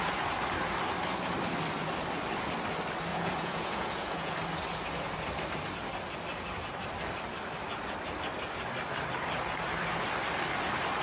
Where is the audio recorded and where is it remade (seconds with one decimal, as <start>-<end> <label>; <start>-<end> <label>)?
0.0-3.1 recorded; 3.1-4.3 remade; 4.3-11.0 recorded